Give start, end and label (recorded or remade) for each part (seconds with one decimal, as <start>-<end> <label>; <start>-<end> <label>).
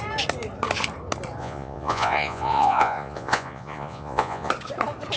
0.0-1.4 recorded; 1.4-4.5 remade; 4.5-5.2 recorded